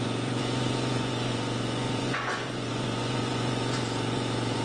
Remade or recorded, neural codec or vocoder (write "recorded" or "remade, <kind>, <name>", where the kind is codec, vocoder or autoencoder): remade, vocoder, Vocos